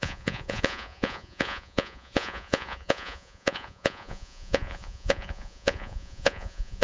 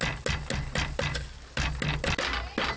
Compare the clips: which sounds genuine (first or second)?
second